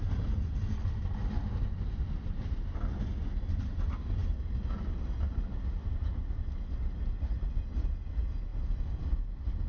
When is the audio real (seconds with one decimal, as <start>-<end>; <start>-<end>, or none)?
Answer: 0.0-9.7